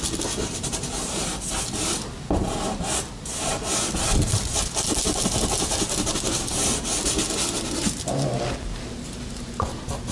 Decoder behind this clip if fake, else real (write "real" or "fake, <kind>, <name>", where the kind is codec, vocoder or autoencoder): real